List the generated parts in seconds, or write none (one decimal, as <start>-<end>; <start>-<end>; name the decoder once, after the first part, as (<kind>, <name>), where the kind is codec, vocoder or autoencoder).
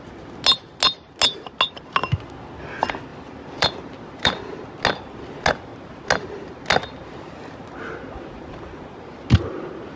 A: 3.1-4.6 (vocoder, BigVGAN v2)